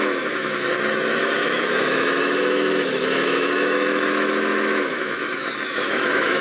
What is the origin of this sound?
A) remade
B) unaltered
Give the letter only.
A